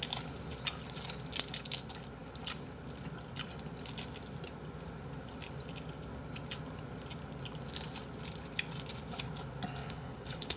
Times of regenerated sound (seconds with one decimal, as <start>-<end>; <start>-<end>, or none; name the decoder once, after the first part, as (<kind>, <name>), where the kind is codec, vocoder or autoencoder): 9.8-10.6 (codec, HILCodec)